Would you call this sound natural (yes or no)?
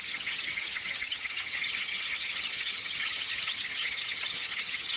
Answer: no